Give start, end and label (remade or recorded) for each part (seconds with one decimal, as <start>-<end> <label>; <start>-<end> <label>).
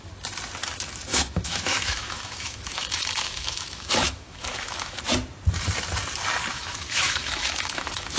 0.0-1.1 recorded; 1.1-5.0 remade; 5.0-6.5 recorded; 6.5-8.2 remade